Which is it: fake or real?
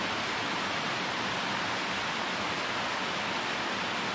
real